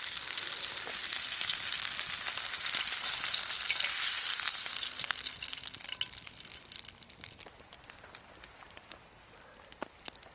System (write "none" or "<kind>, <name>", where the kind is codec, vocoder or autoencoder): none